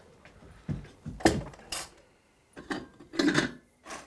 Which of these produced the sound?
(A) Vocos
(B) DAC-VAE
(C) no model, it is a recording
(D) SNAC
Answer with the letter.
C